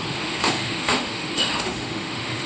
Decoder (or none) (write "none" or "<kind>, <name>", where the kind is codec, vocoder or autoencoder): autoencoder, DAC-VAE